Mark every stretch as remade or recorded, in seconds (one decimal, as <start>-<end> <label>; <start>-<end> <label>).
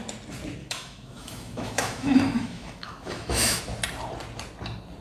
0.0-0.6 recorded; 0.6-3.6 remade; 3.6-5.0 recorded